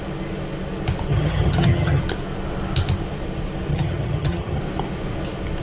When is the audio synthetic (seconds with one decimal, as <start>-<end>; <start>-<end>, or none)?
1.1-2.0; 3.7-4.6